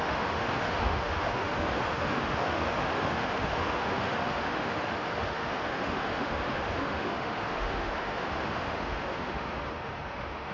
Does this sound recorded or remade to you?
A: remade